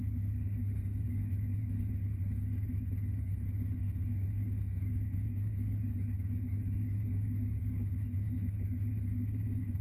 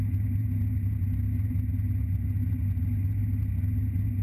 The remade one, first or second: first